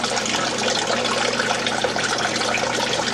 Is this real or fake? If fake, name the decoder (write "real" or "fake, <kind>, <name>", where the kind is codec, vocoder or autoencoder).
real